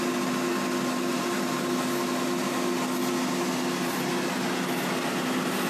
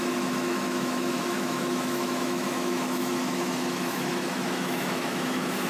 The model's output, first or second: second